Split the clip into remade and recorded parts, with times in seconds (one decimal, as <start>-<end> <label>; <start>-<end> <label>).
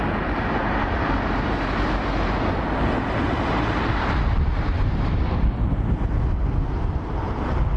0.0-7.8 recorded